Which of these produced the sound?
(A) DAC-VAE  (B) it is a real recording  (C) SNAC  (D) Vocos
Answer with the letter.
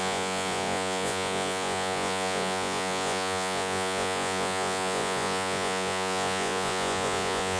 D